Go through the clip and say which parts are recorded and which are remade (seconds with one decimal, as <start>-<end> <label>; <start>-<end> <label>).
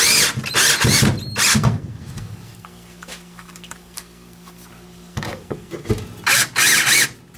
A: 0.0-1.5 recorded; 1.5-5.9 remade; 5.9-7.4 recorded